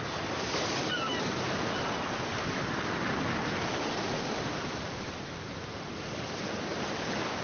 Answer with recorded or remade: recorded